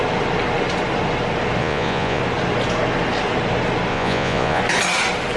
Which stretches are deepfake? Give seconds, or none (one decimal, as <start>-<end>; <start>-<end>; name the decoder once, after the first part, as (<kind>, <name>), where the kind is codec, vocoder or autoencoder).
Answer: 1.6-2.2 (vocoder, Vocos); 3.9-4.6